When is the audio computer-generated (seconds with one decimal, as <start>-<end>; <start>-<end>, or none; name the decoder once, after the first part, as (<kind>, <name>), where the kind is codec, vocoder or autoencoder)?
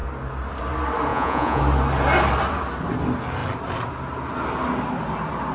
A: 1.1-1.6 (vocoder, Vocos)